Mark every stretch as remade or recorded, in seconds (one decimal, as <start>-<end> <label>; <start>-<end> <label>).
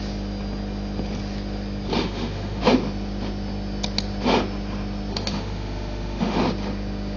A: 0.0-1.9 recorded; 1.9-2.6 remade; 2.6-5.1 recorded; 5.1-6.4 remade; 6.4-7.2 recorded